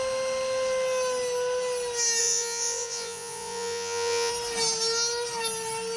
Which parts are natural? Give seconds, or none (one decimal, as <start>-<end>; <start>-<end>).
0.0-2.2; 4.3-6.0